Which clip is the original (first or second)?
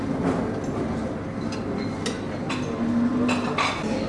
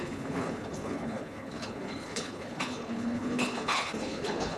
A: first